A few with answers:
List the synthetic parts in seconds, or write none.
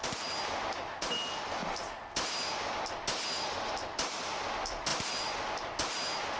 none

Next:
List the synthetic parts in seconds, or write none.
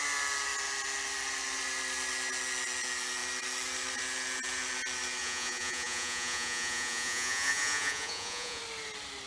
5.2-8.6 (vocoder, Vocos)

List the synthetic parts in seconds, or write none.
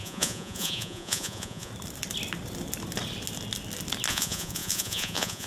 0.0-1.7 (vocoder, Vocos); 4.1-5.5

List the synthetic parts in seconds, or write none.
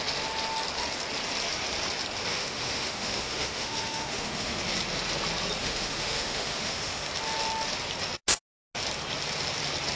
2.3-4.6 (autoencoder, DAC-VAE); 5.6-7.1